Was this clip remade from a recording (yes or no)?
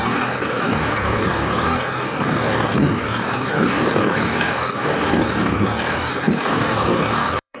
yes